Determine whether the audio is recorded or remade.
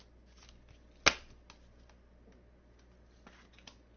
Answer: recorded